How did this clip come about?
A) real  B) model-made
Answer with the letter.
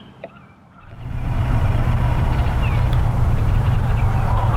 B